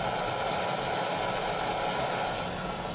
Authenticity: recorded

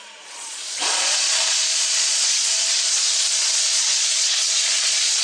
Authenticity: remade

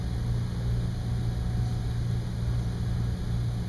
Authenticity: recorded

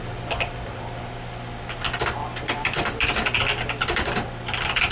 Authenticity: recorded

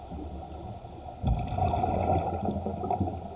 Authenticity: recorded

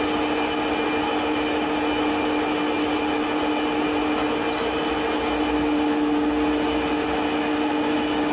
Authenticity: recorded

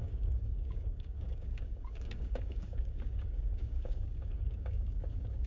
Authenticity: remade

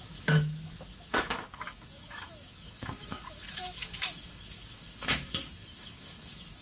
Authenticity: remade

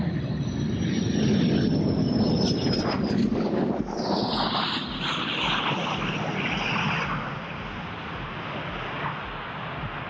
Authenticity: recorded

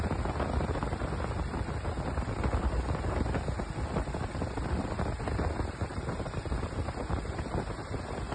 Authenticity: recorded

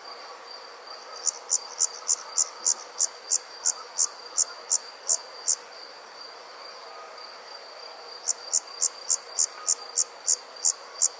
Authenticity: recorded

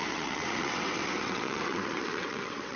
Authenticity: remade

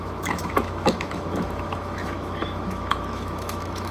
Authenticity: remade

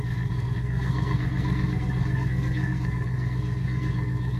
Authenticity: remade